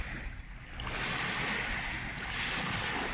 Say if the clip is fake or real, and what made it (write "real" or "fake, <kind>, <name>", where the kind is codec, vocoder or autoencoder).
real